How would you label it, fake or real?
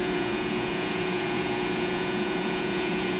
fake